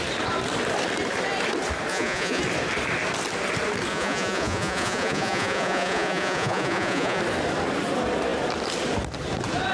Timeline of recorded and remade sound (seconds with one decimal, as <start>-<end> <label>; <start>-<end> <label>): 0.0-1.9 recorded; 1.9-2.4 remade; 2.4-3.9 recorded; 3.9-7.2 remade; 7.2-9.7 recorded

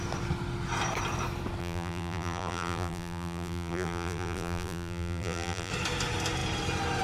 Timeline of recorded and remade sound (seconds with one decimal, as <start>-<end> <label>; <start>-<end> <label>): 0.0-1.6 recorded; 1.6-5.7 remade; 5.7-7.0 recorded

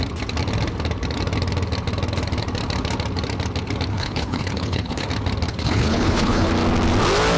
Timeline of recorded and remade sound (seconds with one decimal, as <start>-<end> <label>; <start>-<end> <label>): 0.0-3.9 recorded; 3.9-5.1 remade; 5.1-5.5 recorded; 5.5-6.5 remade; 6.5-7.4 recorded

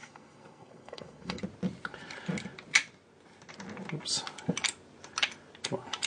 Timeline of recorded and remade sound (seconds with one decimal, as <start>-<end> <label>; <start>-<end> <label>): 0.0-1.4 remade; 1.4-6.1 recorded

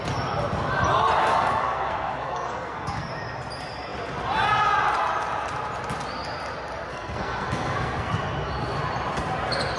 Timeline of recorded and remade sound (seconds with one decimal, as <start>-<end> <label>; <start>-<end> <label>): 0.0-1.2 recorded; 1.2-3.1 remade; 3.1-6.9 recorded; 6.9-8.1 remade; 8.1-9.8 recorded

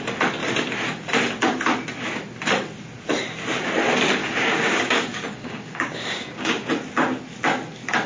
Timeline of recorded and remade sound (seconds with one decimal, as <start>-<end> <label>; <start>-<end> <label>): 0.0-4.2 recorded; 4.2-6.7 remade; 6.7-8.1 recorded